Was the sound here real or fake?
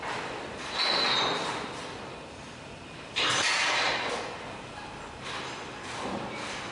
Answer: real